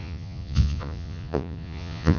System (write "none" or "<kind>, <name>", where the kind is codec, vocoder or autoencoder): vocoder, Vocos